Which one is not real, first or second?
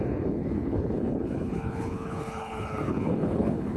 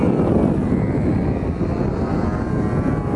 first